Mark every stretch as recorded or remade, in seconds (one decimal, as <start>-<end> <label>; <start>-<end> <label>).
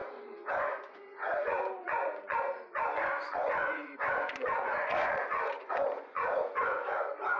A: 0.0-7.4 remade